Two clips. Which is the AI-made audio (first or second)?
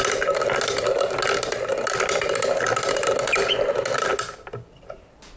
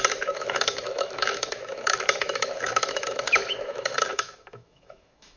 second